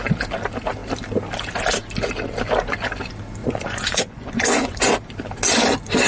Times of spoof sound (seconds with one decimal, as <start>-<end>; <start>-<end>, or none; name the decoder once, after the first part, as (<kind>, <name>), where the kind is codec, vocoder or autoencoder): 3.4-4.8 (vocoder, Vocos)